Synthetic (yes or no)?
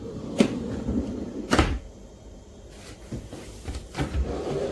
yes